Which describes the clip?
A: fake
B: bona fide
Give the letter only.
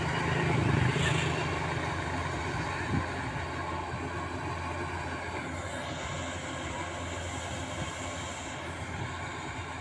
B